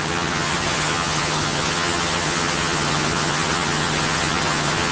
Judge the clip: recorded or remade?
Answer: remade